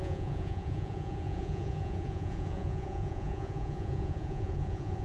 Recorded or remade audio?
remade